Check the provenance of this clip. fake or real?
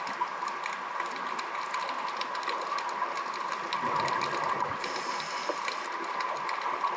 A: real